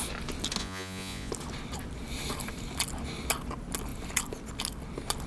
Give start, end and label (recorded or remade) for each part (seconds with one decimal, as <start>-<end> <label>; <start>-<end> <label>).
0.0-0.6 recorded; 0.6-1.3 remade; 1.3-5.3 recorded